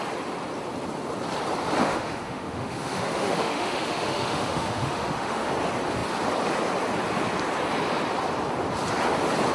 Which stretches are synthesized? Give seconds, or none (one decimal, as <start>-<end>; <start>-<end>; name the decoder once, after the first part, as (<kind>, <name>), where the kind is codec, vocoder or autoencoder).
1.8-5.5 (autoencoder, DAC-VAE)